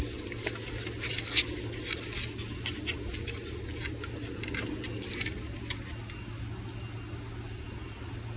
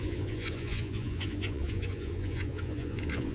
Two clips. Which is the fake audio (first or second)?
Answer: second